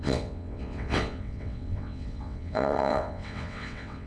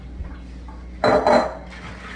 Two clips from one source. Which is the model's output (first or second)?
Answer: first